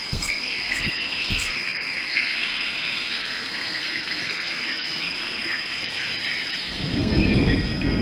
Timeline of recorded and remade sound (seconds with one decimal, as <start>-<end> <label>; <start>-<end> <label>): 0.0-6.1 remade; 6.1-6.6 recorded; 6.6-8.0 remade